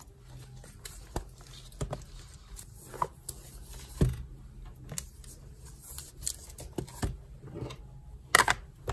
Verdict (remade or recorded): recorded